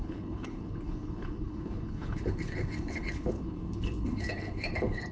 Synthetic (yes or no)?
yes